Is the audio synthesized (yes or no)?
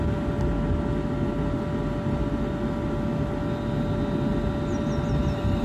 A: no